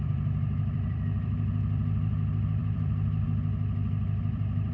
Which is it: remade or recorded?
remade